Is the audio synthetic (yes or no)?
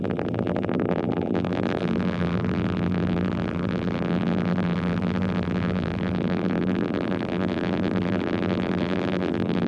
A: yes